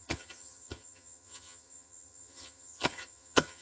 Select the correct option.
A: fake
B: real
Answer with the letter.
A